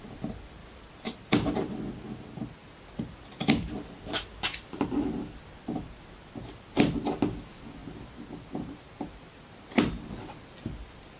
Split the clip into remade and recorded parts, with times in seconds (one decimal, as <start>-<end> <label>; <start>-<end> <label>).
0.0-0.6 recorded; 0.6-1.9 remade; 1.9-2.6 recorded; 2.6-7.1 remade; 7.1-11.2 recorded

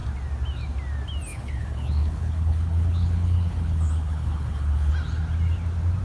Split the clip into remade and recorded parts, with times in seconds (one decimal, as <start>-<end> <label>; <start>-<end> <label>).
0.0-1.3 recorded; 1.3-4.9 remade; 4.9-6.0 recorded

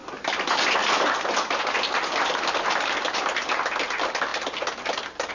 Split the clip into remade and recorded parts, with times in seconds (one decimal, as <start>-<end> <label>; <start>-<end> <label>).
0.0-5.3 recorded